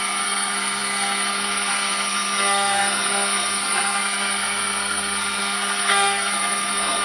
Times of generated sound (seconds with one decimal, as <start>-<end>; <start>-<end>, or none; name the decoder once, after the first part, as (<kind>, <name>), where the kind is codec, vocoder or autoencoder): 0.0-7.0 (codec, SNAC)